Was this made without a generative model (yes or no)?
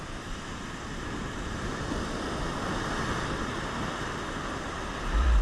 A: yes